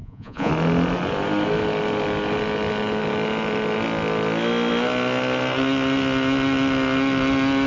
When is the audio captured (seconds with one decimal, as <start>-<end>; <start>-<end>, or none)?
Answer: 0.5-7.7